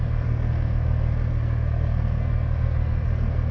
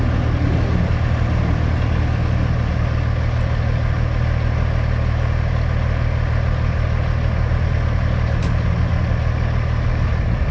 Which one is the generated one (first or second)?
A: first